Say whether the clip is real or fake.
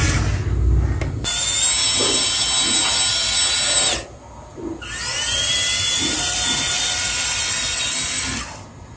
real